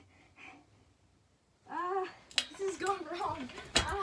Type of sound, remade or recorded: recorded